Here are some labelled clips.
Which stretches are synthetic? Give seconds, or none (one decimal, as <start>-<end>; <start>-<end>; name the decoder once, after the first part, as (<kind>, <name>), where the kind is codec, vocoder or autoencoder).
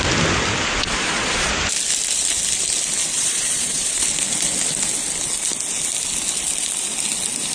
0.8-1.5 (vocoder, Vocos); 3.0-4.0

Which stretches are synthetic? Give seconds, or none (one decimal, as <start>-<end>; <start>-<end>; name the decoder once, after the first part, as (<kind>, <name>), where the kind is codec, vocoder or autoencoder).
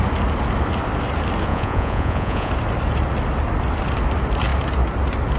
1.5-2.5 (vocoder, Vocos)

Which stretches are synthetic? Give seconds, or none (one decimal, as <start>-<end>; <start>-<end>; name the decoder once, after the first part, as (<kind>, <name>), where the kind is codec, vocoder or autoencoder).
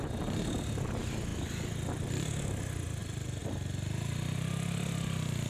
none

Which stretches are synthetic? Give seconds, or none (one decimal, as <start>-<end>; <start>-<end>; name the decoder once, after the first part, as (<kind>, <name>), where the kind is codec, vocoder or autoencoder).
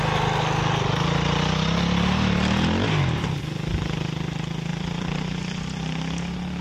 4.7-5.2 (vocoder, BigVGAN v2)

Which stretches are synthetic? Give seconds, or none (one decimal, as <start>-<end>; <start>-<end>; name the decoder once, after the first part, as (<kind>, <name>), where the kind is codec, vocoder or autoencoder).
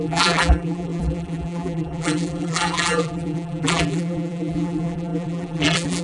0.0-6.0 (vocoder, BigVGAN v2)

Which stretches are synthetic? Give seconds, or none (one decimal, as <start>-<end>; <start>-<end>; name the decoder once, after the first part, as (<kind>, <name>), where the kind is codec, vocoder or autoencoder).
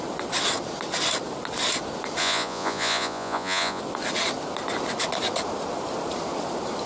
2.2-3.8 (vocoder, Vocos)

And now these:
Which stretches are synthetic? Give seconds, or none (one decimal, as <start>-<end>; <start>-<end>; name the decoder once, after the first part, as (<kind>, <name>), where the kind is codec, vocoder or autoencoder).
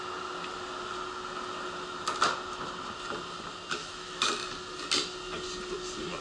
3.8-4.3 (autoencoder, DAC-VAE)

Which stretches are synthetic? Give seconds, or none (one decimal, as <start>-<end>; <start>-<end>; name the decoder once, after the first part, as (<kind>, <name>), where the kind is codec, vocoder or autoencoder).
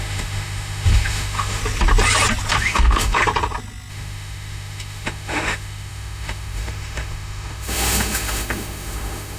0.0-1.6 (autoencoder, DAC-VAE); 2.6-3.2; 3.9-9.4